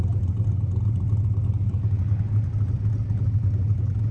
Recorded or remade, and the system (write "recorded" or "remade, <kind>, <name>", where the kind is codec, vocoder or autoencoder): recorded